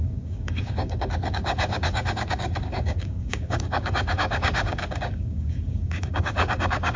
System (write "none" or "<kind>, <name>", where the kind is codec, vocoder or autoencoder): codec, DAC